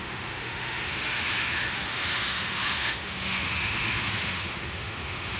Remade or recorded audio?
remade